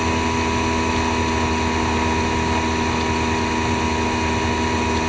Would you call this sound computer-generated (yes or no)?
no